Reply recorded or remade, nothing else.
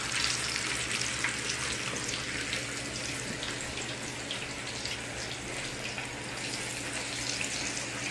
recorded